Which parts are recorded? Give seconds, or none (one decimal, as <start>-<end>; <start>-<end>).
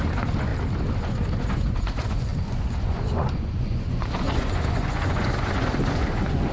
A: 0.5-1.0